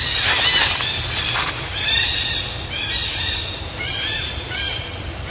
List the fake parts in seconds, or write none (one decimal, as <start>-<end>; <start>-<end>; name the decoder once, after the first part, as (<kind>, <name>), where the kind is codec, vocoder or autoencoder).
3.0-5.3 (vocoder, BigVGAN v2)